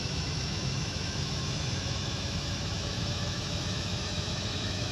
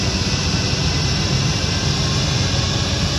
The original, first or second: second